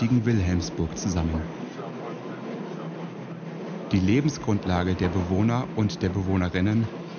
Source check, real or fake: real